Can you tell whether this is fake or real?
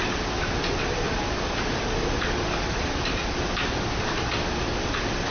real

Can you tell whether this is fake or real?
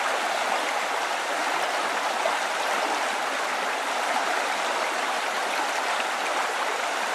real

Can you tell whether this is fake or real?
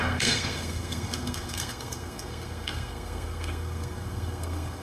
fake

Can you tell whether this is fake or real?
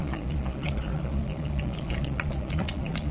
fake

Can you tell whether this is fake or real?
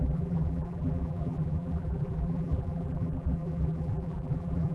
fake